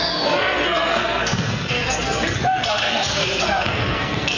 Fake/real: fake